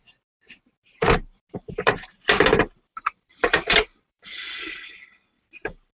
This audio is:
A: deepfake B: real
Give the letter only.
A